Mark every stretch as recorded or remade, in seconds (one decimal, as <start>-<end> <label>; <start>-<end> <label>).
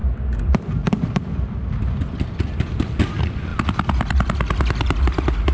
0.0-5.5 recorded